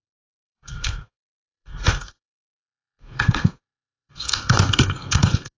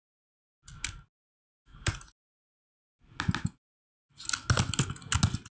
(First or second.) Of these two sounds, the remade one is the first